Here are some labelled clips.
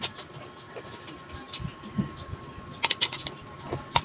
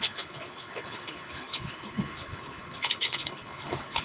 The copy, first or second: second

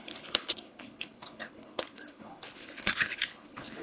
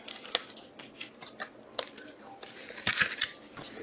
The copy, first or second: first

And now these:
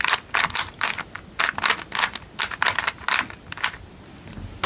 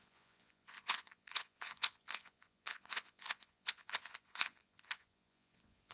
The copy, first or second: second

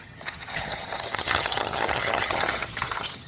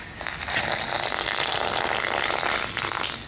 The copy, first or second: first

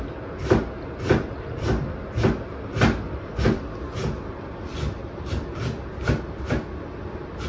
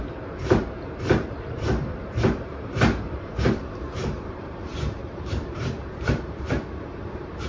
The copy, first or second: second